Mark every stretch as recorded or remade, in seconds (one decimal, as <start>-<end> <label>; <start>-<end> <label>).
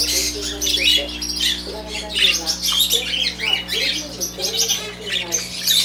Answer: 0.0-5.8 recorded